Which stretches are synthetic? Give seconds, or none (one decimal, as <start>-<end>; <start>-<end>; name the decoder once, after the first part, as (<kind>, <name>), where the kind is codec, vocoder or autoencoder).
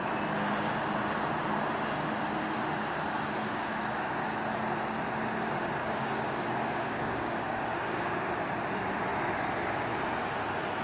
3.5-4.1 (codec, DAC); 5.8-8.3